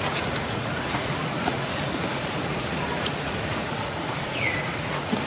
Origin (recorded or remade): remade